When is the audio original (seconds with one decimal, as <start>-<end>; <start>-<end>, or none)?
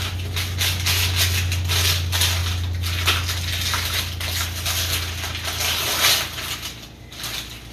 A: 0.0-7.7